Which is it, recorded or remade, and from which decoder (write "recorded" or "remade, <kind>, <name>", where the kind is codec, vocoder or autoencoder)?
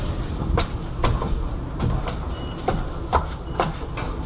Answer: recorded